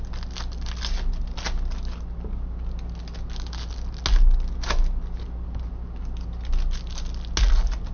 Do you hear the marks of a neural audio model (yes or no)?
no